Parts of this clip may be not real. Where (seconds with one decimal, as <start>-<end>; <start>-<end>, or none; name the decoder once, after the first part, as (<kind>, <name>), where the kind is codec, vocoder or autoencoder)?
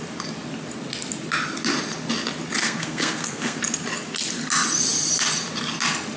2.6-3.6 (codec, SNAC)